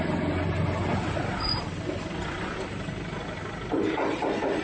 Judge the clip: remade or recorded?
recorded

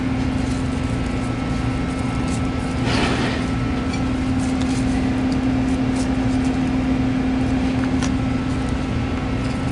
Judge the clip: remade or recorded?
recorded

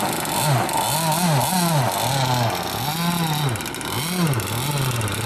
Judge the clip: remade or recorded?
recorded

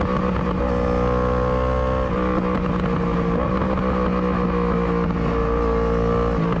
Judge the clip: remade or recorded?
recorded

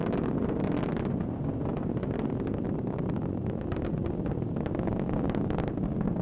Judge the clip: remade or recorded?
recorded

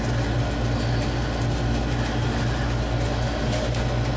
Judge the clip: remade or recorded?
recorded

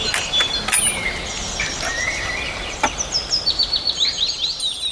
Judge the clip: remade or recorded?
recorded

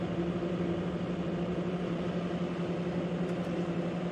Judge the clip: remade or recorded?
recorded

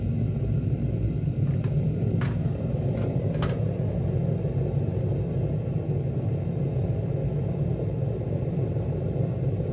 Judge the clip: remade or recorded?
recorded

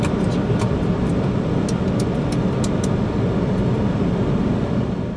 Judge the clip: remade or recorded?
recorded